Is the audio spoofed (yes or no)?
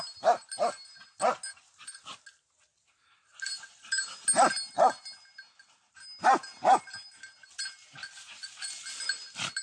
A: no